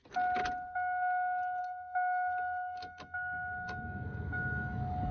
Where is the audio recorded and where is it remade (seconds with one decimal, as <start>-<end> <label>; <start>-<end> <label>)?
0.0-1.6 recorded; 1.6-5.1 remade